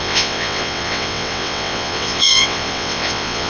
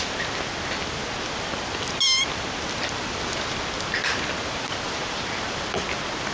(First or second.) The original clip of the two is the second